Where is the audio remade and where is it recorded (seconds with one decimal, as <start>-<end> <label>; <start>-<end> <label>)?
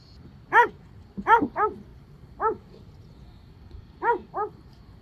0.0-1.9 recorded; 1.9-5.0 remade